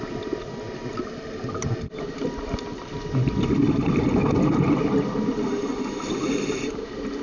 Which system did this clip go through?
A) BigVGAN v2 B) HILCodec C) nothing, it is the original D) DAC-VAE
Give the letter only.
C